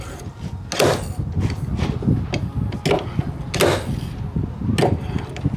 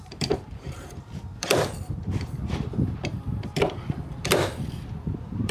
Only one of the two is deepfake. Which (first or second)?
second